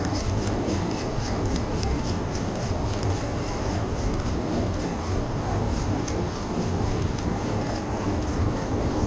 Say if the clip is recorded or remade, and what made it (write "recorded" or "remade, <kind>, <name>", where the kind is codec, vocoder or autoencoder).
remade, codec, DAC